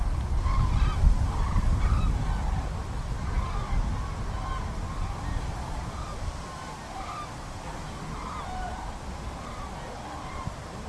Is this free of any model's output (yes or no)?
yes